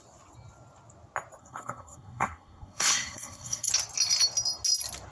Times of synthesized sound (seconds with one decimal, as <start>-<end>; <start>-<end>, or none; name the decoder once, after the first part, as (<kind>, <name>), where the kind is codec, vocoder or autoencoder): 1.4-3.7 (codec, SNAC)